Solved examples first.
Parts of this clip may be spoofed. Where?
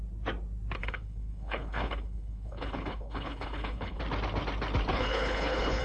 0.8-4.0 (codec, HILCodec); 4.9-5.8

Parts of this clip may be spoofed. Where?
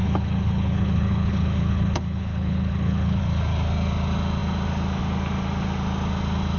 0.0-3.2 (codec, HILCodec)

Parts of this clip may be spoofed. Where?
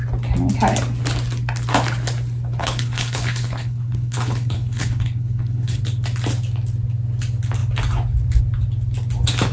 2.6-5.8 (codec, HILCodec)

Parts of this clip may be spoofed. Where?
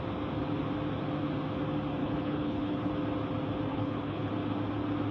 2.0-2.9 (codec, HILCodec); 3.7-4.3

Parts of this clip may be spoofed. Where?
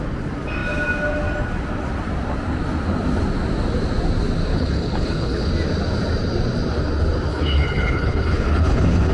4.5-5.5 (codec, HILCodec); 7.3-9.1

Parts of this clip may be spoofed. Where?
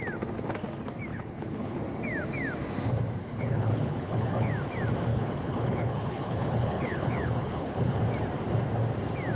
1.1-1.8 (codec, HILCodec); 3.2-4.5; 5.1-8.0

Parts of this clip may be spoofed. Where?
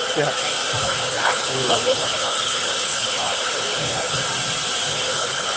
0.8-4.2 (codec, HILCodec); 4.9-5.6